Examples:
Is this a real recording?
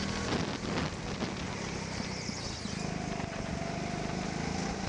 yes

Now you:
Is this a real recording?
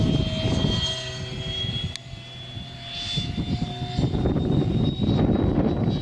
yes